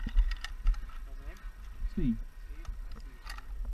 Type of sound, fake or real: real